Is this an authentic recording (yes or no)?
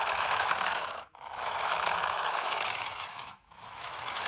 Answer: no